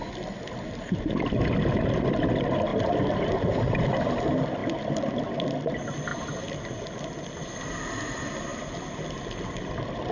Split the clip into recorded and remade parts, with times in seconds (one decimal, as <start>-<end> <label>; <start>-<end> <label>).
0.0-10.1 recorded